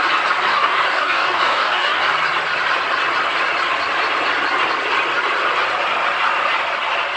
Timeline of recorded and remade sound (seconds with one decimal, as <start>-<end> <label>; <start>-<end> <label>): 0.0-0.5 recorded; 0.5-2.0 remade; 2.0-7.2 recorded